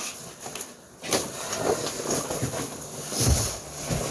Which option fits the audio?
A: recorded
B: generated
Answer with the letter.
A